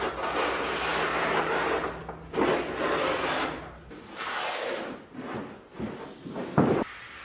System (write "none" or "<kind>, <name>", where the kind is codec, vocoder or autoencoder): none